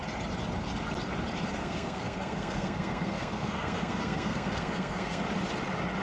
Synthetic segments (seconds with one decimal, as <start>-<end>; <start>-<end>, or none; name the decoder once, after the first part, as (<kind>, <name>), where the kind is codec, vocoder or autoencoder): 1.6-5.2 (codec, SNAC)